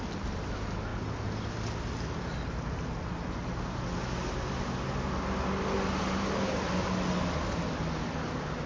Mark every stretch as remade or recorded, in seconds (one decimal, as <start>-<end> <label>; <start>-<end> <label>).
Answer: 0.0-8.7 recorded

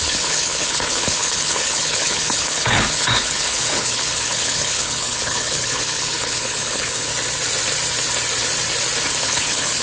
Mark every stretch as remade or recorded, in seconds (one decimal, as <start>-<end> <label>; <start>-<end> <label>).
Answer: 0.0-7.1 remade; 7.1-9.2 recorded; 9.2-9.8 remade

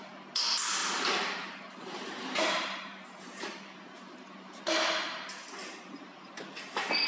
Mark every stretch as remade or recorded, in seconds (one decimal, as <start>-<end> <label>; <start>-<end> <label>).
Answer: 0.0-0.8 recorded; 0.8-4.6 remade; 4.6-5.6 recorded; 5.6-6.3 remade; 6.3-7.1 recorded

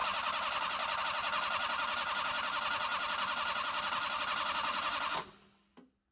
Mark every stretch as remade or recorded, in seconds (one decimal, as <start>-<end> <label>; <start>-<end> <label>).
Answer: 0.0-6.1 recorded

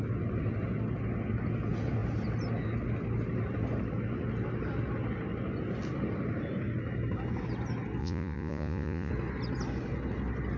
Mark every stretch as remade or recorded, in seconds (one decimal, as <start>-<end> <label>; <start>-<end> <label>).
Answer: 0.0-8.0 recorded; 8.0-9.1 remade; 9.1-10.6 recorded

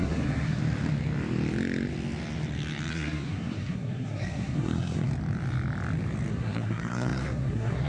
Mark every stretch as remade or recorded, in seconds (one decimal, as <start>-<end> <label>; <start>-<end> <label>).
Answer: 0.0-0.6 remade; 0.6-2.9 recorded; 2.9-5.1 remade; 5.1-6.3 recorded; 6.3-7.9 remade

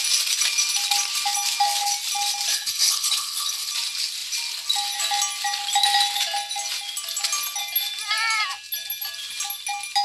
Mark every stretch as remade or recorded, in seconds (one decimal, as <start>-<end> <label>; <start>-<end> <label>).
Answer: 0.0-2.5 recorded; 2.5-3.7 remade; 3.7-10.0 recorded

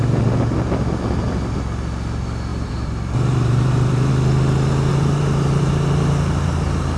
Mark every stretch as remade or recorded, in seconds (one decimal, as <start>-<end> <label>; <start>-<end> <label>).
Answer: 0.0-2.5 recorded; 2.5-4.1 remade; 4.1-4.9 recorded; 4.9-5.7 remade; 5.7-7.0 recorded